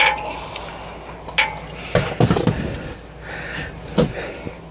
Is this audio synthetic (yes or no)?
no